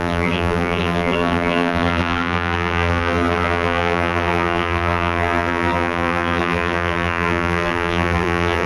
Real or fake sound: fake